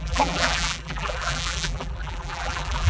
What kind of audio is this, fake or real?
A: fake